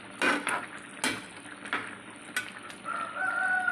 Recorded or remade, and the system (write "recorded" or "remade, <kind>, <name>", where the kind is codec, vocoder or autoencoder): recorded